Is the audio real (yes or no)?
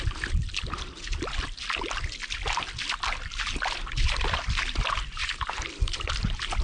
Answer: yes